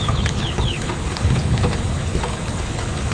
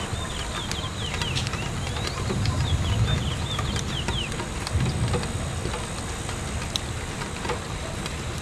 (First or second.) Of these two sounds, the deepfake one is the first